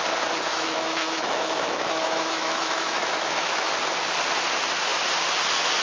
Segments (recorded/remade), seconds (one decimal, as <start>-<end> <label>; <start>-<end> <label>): 0.0-0.5 recorded; 0.5-3.7 remade; 3.7-5.8 recorded